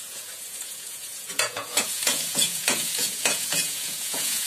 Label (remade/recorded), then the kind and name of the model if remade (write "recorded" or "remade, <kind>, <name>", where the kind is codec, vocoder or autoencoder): remade, vocoder, Vocos